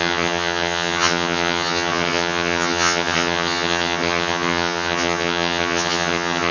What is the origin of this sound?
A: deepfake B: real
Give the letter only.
A